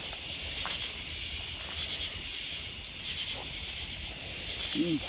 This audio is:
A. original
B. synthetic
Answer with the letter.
A